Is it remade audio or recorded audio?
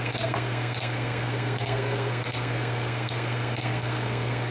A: remade